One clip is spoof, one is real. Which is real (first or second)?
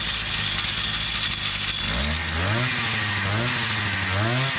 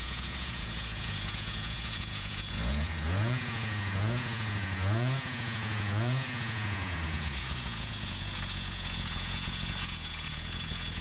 first